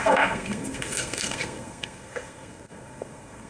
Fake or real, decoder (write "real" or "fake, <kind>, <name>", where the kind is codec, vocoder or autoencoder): fake, codec, SNAC